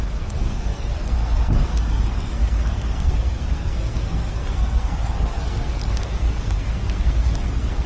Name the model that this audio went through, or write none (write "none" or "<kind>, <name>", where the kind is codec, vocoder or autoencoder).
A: codec, SNAC